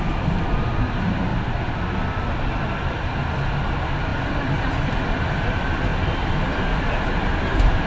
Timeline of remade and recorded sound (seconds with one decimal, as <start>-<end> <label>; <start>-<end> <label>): 0.0-7.9 recorded

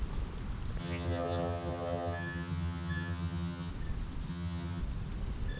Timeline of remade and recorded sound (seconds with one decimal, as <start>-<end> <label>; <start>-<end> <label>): 0.0-0.8 recorded; 0.8-3.7 remade; 3.7-4.3 recorded; 4.3-4.8 remade; 4.8-5.6 recorded

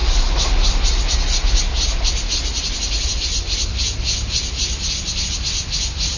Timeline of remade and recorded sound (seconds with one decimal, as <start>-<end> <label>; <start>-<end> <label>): 0.0-6.2 recorded

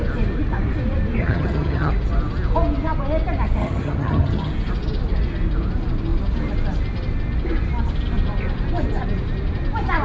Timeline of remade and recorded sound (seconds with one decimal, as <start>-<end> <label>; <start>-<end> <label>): 0.0-1.2 recorded; 1.2-1.9 remade; 1.9-3.6 recorded; 3.6-4.5 remade; 4.5-10.0 recorded

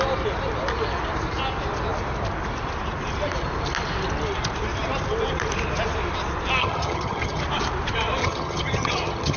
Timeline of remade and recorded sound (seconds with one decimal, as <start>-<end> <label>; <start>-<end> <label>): 0.0-6.6 recorded; 6.6-7.4 remade; 7.4-8.2 recorded; 8.2-9.4 remade